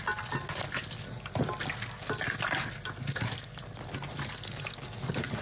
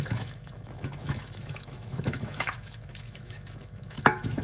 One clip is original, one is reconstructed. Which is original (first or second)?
first